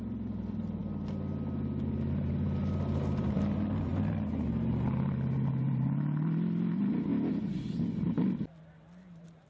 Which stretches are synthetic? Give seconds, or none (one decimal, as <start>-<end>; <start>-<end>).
none

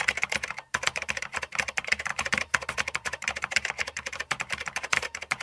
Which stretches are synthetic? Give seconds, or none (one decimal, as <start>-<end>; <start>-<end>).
0.0-5.4

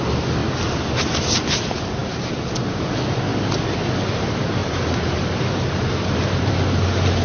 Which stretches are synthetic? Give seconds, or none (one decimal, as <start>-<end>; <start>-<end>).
2.0-2.6; 4.6-6.5

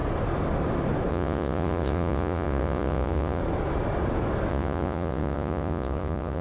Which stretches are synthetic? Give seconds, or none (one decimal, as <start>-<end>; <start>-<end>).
1.1-3.4; 4.5-6.4

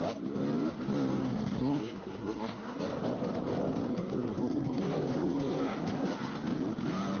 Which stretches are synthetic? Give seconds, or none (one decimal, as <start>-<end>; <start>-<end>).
1.2-2.8; 3.9-6.1

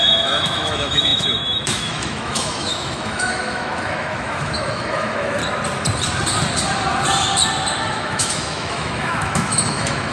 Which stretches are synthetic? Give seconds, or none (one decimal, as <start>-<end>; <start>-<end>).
0.0-5.4; 7.9-10.1